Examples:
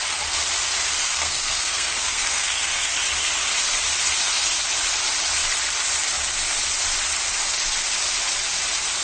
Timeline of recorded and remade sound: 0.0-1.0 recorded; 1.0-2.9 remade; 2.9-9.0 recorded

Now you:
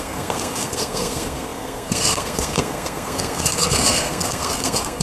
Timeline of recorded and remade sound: 0.0-5.0 remade

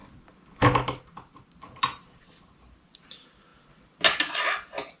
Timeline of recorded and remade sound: 0.0-5.0 recorded

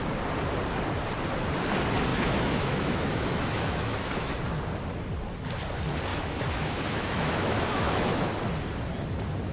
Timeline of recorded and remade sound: 0.0-2.1 recorded; 2.1-4.4 remade; 4.4-6.1 recorded; 6.1-8.3 remade; 8.3-9.5 recorded